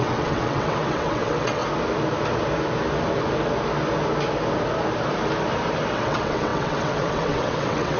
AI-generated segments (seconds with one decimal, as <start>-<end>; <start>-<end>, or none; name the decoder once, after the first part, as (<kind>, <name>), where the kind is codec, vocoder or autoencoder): 0.0-1.6 (vocoder, WaveNeXt); 5.9-8.0